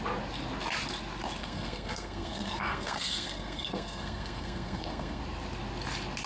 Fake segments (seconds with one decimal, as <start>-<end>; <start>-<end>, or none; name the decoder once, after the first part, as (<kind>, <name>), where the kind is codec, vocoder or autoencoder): 1.4-5.2 (codec, SNAC)